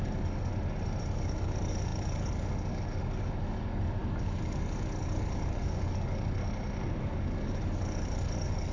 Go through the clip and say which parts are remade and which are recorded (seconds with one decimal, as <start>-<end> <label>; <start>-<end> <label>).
0.0-0.5 remade; 0.5-1.1 recorded; 1.1-6.4 remade; 6.4-7.0 recorded; 7.0-8.7 remade